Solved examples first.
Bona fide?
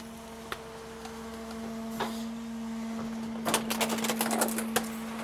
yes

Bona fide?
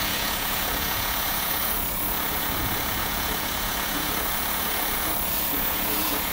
no